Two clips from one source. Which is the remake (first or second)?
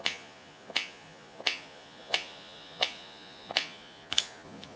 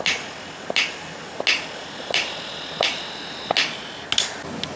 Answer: first